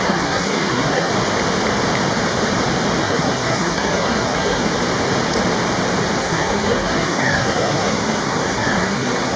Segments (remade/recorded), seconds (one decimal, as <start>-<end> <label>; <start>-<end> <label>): 0.0-1.1 remade; 1.1-3.0 recorded; 3.0-4.7 remade; 4.7-6.2 recorded; 6.2-9.4 remade